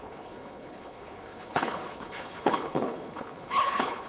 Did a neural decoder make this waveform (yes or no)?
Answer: yes